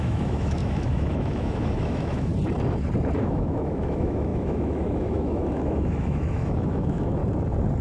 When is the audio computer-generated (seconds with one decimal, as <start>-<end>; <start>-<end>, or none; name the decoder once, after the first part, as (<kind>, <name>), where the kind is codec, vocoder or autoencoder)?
0.0-2.3 (autoencoder, DAC-VAE); 3.2-7.2

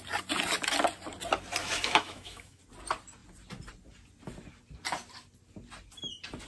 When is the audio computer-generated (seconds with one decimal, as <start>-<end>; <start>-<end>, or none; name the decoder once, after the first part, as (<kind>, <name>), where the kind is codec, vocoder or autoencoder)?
1.6-2.6 (autoencoder, DAC-VAE)

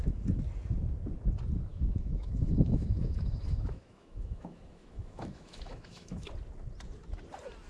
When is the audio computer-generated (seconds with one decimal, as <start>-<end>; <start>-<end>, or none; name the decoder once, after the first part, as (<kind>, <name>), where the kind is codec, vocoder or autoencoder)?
1.7-6.3 (autoencoder, DAC-VAE)

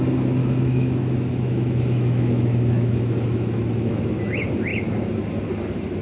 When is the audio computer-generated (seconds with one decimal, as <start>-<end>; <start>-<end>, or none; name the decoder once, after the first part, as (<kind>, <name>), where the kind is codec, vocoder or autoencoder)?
0.4-4.0 (autoencoder, DAC-VAE)

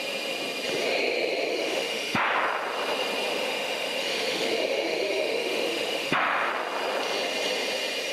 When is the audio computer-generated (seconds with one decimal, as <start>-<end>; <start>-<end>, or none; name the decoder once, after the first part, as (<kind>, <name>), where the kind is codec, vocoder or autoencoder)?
1.5-2.2 (autoencoder, DAC-VAE); 3.3-6.5

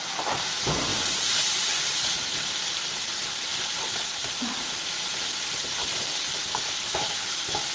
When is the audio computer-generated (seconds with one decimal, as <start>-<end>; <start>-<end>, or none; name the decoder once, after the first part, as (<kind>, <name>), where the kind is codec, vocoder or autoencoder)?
6.5-7.3 (autoencoder, DAC-VAE)

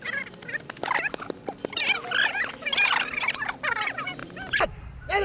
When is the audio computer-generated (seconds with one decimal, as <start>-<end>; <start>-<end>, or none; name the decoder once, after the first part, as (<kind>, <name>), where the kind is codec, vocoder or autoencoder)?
none